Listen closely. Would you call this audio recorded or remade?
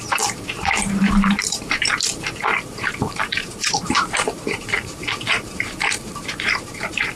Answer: remade